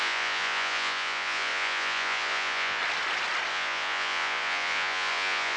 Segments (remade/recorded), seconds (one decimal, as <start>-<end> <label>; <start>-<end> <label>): 0.0-2.8 remade; 2.8-3.5 recorded; 3.5-5.6 remade